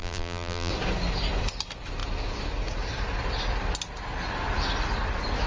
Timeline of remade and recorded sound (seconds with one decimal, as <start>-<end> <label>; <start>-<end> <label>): 0.0-0.7 remade; 0.7-5.5 recorded